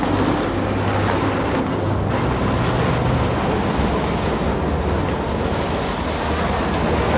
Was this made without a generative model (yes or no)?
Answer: yes